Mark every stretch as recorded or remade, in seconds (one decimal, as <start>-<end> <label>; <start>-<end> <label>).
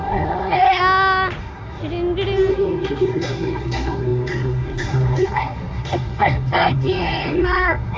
0.0-0.8 remade; 0.8-1.4 recorded; 1.4-1.8 remade; 1.8-2.5 recorded; 2.5-8.0 remade